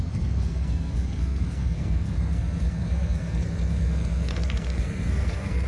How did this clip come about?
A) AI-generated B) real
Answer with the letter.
A